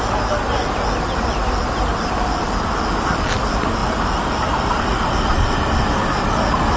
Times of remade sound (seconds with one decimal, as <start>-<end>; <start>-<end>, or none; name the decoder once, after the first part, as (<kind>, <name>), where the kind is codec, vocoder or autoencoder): none